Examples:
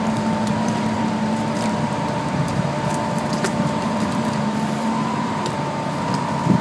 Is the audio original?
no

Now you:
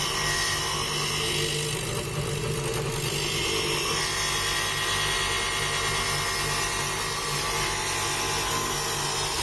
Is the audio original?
yes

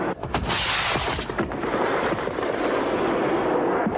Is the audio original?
yes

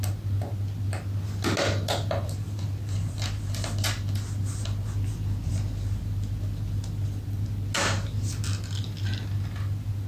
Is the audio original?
yes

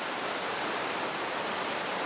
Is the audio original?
no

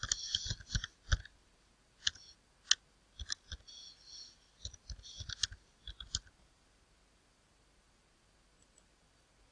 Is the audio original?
yes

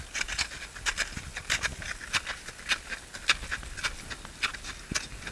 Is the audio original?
yes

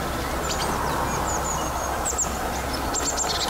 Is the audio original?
yes